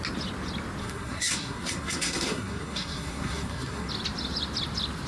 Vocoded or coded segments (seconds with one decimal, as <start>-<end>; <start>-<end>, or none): 0.8-3.9